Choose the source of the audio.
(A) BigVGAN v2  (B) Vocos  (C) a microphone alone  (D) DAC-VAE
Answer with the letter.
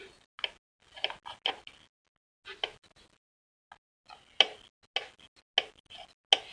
C